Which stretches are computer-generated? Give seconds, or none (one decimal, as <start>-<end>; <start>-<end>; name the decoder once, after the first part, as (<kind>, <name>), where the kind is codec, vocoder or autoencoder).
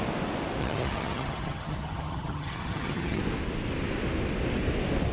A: 0.6-3.2 (vocoder, HiFi-GAN)